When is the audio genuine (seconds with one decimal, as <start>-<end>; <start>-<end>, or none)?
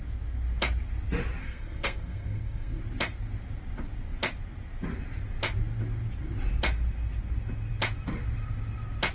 0.0-1.4; 2.8-9.1